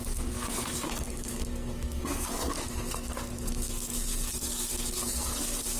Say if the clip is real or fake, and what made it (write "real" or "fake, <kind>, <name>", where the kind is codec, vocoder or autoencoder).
fake, codec, SNAC